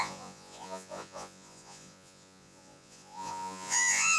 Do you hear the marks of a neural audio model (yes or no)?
yes